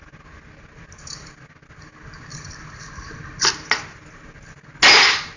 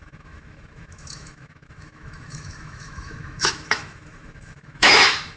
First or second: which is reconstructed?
second